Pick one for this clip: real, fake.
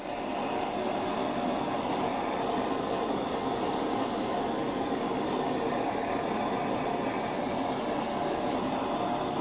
real